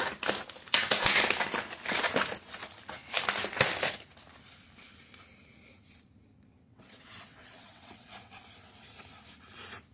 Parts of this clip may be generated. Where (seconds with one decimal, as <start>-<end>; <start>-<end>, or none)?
6.5-8.4